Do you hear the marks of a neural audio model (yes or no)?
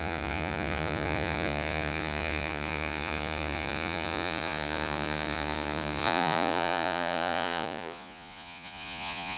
yes